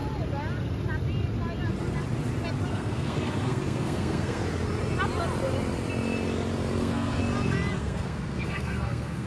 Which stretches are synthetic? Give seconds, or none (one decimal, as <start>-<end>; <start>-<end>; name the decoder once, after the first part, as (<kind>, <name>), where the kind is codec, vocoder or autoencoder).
2.7-4.4 (codec, SNAC); 6.8-7.2; 7.8-9.3